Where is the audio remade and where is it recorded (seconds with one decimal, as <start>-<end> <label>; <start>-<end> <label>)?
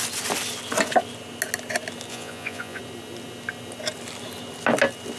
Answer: 0.0-2.1 recorded; 2.1-2.8 remade; 2.8-5.2 recorded